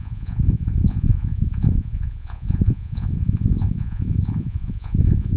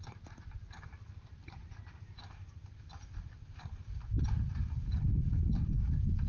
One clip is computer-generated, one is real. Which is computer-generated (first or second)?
first